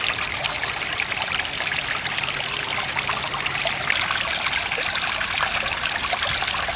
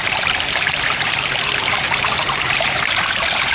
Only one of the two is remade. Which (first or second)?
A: second